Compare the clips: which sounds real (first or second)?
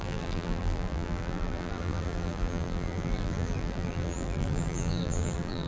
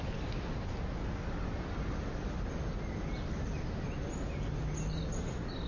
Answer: second